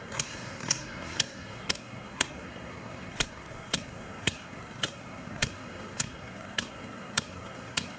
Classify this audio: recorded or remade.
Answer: remade